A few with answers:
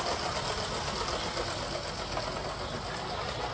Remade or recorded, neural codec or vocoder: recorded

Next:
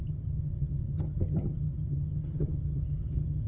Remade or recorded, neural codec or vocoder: remade, vocoder, HiFi-GAN